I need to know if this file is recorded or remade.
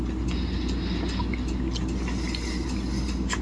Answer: recorded